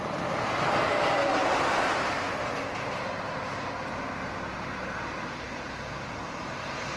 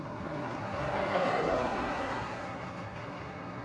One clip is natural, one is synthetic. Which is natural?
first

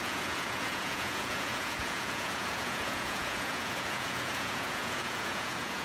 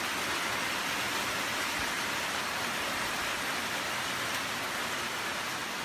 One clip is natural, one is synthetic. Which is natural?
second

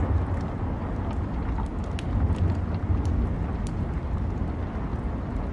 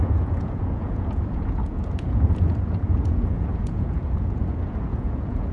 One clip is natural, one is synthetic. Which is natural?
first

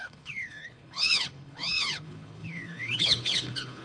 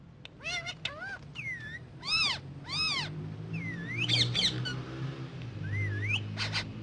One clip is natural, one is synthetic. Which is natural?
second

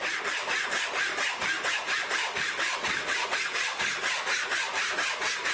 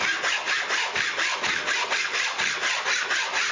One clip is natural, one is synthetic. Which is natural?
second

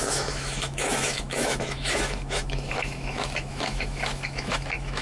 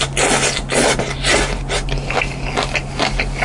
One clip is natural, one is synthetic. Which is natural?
second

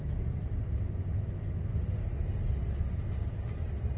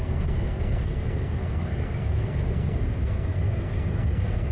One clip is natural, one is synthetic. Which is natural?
first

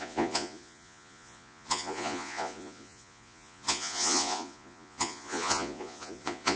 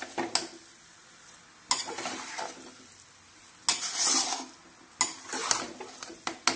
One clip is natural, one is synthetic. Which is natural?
second